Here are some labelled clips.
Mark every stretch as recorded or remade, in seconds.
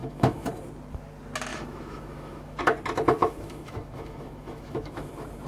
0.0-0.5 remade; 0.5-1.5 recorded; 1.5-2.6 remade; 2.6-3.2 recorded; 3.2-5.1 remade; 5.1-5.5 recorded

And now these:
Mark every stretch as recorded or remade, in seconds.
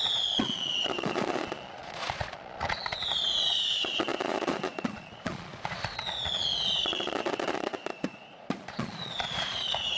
0.0-10.0 remade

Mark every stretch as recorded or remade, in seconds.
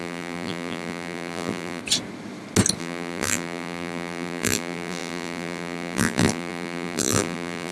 0.0-1.8 remade; 1.8-2.8 recorded; 2.8-7.7 remade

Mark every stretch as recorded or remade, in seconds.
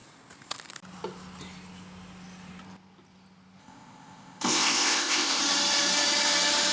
0.0-3.6 recorded; 3.6-5.4 remade; 5.4-6.7 recorded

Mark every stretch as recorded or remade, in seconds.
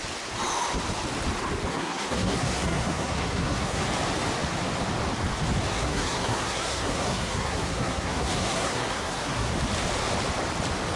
0.0-1.7 recorded; 1.7-3.8 remade; 3.8-5.7 recorded; 5.7-9.5 remade; 9.5-11.0 recorded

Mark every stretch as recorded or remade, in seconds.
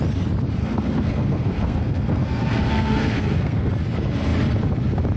0.0-0.6 recorded; 0.6-3.7 remade; 3.7-5.2 recorded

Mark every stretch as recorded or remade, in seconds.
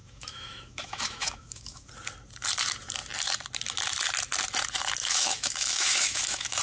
0.0-1.9 remade; 1.9-5.0 recorded; 5.0-6.6 remade